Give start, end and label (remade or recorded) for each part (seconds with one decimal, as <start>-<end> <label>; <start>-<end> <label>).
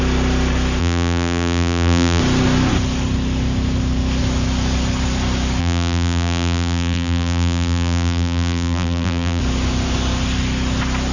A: 0.0-0.8 recorded; 0.8-2.2 remade; 2.2-5.6 recorded; 5.6-9.4 remade; 9.4-11.1 recorded